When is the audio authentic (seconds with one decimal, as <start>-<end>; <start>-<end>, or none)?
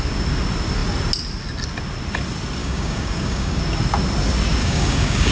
0.0-2.6; 3.6-4.6